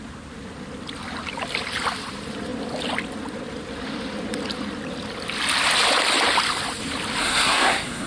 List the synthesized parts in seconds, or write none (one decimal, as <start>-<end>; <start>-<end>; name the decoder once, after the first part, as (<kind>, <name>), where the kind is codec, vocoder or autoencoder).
7.2-8.1 (codec, SNAC)